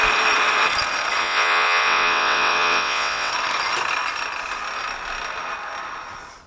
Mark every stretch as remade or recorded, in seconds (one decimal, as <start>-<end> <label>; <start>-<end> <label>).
0.0-1.2 recorded; 1.2-3.3 remade; 3.3-6.5 recorded